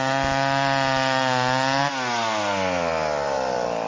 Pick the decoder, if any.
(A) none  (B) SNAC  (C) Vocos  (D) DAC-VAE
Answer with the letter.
A